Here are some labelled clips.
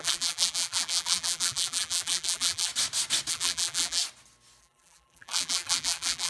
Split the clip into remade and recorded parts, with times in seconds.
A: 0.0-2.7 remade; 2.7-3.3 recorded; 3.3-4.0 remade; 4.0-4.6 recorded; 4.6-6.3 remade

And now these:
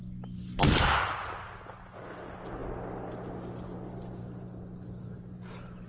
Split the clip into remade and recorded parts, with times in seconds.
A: 0.0-5.9 recorded

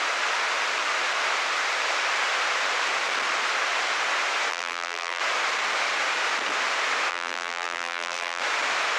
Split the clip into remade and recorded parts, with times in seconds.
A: 0.0-4.5 recorded; 4.5-5.2 remade; 5.2-7.1 recorded; 7.1-8.4 remade; 8.4-9.0 recorded

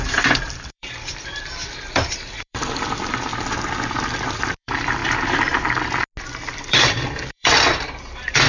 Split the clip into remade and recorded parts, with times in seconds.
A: 0.0-3.3 remade; 3.3-3.9 recorded; 3.9-5.0 remade; 5.0-6.5 recorded; 6.5-8.5 remade

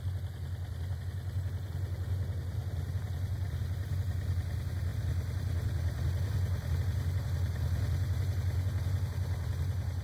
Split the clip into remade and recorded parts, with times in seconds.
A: 0.0-10.0 recorded

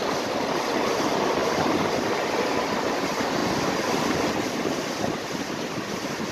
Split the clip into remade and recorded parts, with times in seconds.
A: 0.0-0.7 remade; 0.7-1.4 recorded; 1.4-2.3 remade; 2.3-3.4 recorded; 3.4-6.3 remade